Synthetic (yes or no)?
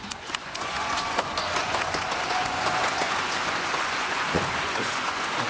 yes